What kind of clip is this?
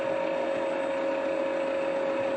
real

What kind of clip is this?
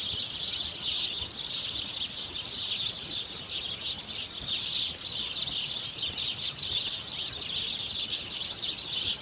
real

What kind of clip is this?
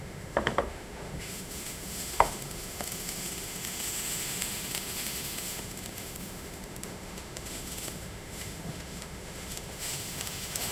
fake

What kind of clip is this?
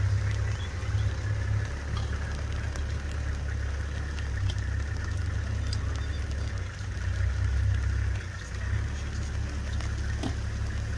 real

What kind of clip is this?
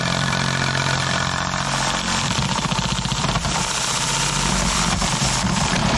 fake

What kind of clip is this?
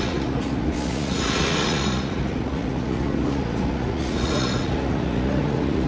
fake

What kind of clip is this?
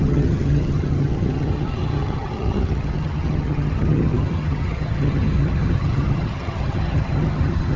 fake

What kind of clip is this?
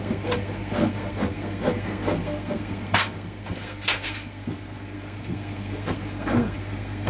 fake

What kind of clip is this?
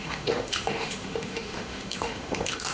fake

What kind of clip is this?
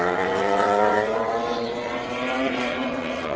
fake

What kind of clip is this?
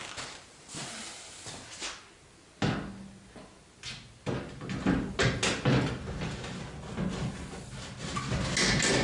real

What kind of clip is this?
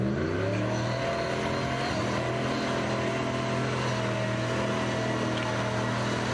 real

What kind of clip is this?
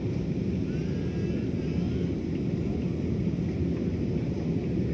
real